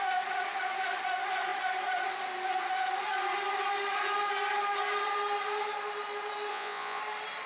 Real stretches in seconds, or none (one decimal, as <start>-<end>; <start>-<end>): 0.0-6.5; 7.0-7.5